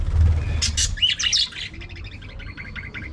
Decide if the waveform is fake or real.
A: real